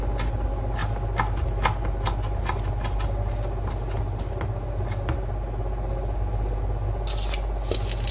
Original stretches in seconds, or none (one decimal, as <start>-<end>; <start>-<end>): 0.0-8.1